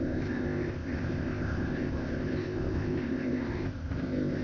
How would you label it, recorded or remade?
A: remade